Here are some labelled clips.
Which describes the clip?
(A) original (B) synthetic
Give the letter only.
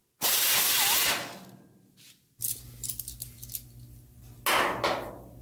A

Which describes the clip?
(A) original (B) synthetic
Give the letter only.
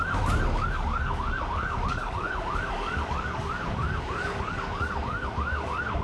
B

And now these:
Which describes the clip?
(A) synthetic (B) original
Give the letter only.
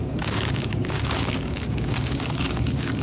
A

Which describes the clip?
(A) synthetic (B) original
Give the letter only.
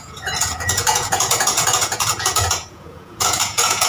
A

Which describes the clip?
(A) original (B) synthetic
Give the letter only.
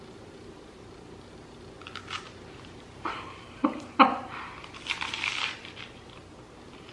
B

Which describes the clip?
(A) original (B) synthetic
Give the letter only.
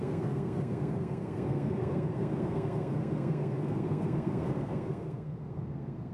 B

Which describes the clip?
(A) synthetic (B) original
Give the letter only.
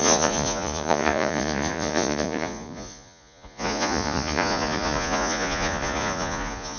A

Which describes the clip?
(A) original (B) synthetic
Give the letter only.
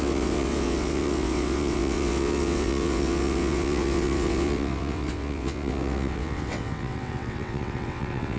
B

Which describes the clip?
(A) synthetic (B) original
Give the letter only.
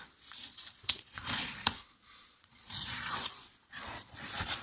A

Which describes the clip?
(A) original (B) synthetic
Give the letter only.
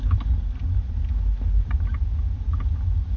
A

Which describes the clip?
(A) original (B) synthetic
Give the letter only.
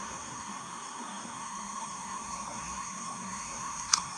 B